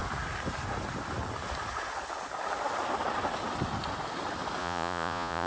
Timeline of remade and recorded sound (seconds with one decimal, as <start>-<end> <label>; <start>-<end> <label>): 0.0-4.6 recorded; 4.6-5.5 remade